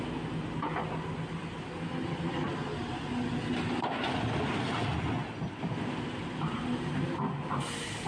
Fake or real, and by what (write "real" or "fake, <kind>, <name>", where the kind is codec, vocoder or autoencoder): real